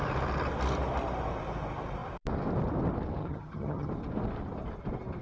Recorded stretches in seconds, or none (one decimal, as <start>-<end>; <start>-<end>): 0.0-3.2; 3.9-5.2